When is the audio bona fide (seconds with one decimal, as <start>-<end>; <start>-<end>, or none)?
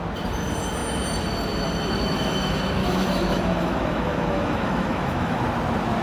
0.0-2.8; 5.4-6.0